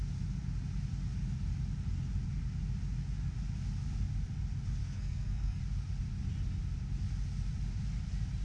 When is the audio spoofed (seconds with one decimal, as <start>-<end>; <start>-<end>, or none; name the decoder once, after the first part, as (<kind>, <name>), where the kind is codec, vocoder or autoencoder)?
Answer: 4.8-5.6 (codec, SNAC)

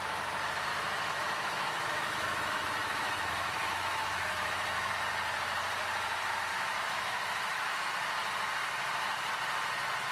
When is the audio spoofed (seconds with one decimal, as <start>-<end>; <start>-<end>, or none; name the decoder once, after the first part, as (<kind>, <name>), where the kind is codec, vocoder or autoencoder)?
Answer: 0.7-4.9 (autoencoder, DAC-VAE); 6.5-7.9

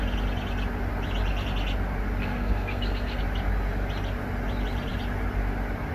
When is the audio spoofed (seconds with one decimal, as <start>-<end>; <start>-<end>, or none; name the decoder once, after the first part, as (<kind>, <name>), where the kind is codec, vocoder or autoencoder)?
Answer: 2.2-3.2 (codec, SNAC)

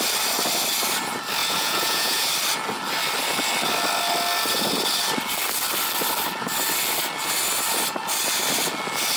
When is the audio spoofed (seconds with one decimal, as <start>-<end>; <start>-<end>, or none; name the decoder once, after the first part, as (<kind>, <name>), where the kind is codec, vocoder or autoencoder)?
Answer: 1.4-2.3 (vocoder, Vocos)

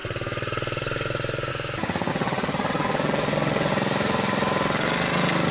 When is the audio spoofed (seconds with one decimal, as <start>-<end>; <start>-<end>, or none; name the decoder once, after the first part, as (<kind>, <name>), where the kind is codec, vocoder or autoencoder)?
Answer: 2.1-3.7 (vocoder, HiFi-GAN)

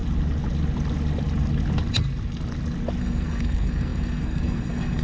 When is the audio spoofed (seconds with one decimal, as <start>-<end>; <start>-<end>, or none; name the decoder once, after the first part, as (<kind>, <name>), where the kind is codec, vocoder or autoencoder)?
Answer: 3.0-5.0 (codec, SNAC)